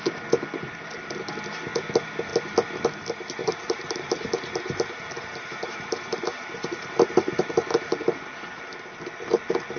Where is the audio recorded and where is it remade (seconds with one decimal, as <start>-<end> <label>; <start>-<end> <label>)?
0.0-3.4 recorded; 3.4-8.6 remade; 8.6-9.8 recorded